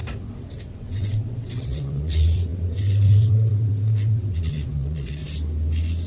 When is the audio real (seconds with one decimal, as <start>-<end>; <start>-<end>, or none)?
0.0-0.7; 5.2-6.1